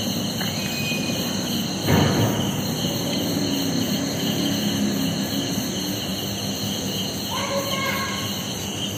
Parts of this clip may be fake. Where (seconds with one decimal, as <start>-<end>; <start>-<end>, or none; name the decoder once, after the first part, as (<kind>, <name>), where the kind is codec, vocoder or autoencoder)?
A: none